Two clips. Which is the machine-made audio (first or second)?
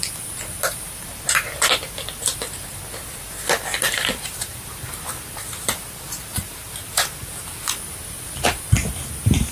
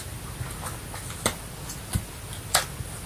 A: first